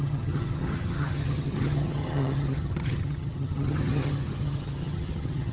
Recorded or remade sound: remade